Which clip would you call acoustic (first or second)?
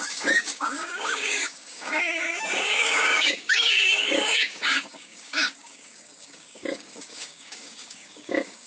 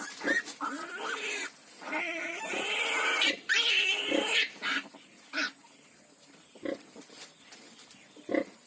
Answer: second